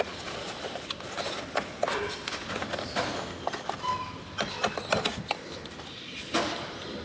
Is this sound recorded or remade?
recorded